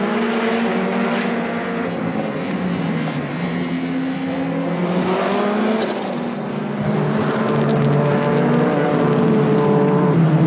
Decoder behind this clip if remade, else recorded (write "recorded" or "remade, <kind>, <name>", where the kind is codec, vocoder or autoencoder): recorded